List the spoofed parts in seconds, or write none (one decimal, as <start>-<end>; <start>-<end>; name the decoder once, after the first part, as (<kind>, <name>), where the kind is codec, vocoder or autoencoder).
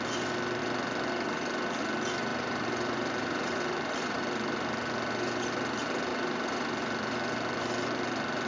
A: 2.3-4.2 (vocoder, BigVGAN v2); 6.1-6.8